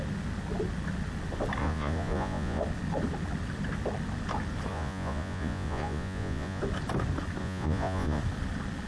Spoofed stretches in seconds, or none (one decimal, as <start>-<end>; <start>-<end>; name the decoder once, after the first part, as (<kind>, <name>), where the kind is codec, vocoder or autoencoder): 1.6-2.6 (vocoder, Vocos); 4.7-6.6; 7.4-8.2